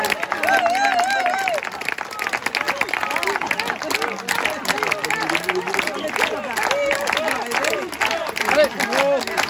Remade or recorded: recorded